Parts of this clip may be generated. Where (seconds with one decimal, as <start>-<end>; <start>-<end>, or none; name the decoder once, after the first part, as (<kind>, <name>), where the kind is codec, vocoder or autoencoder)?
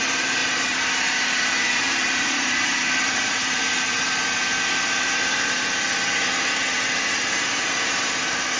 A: 0.0-8.6 (vocoder, BigVGAN v2)